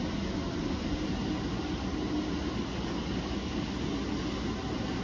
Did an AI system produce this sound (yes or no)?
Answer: no